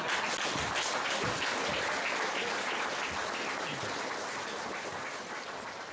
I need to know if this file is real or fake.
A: real